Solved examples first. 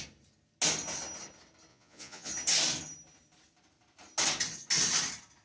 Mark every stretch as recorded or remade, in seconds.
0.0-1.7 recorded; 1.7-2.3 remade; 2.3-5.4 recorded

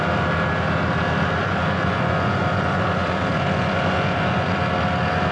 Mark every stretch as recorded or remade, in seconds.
0.0-1.4 recorded; 1.4-4.6 remade; 4.6-5.3 recorded

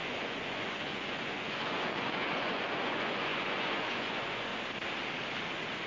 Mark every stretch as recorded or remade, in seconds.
0.0-4.5 remade; 4.5-5.9 recorded